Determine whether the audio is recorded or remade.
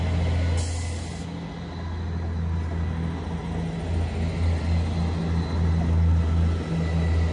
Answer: recorded